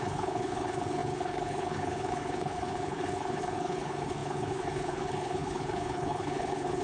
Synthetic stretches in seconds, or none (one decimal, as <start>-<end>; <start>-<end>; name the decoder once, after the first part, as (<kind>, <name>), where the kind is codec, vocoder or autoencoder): 0.0-6.8 (codec, HILCodec)